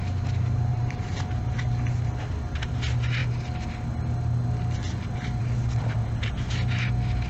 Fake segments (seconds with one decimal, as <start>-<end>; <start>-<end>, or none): 0.7-1.2